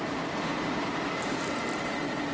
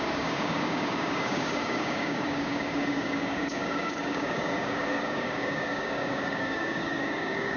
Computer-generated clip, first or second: second